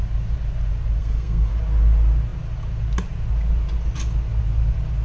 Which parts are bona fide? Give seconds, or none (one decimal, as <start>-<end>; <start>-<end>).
0.0-1.0; 1.5-5.0